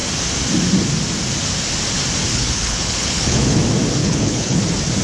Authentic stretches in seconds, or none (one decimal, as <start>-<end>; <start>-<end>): 0.0-2.3; 3.6-4.0; 4.6-5.0

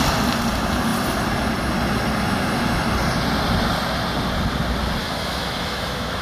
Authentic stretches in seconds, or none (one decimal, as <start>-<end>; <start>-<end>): 0.0-5.0

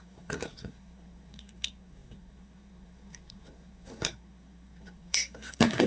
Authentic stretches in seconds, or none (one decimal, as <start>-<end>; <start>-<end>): none

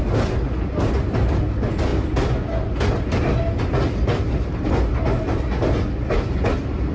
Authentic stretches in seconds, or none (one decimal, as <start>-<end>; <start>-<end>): 0.0-6.9